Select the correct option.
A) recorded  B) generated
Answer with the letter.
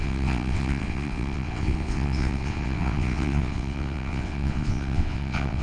B